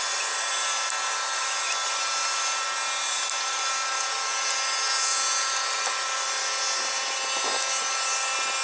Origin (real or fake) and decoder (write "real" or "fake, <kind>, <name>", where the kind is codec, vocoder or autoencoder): real